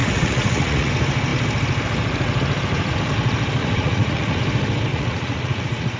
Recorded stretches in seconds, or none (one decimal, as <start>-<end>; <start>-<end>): 0.9-3.6; 4.4-4.9